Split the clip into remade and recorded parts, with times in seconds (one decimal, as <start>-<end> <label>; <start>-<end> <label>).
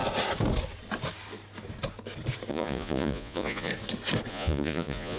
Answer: 0.0-2.5 recorded; 2.5-3.7 remade; 3.7-4.3 recorded; 4.3-5.2 remade